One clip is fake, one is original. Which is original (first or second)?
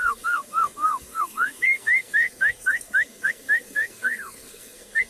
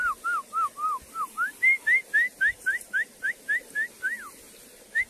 second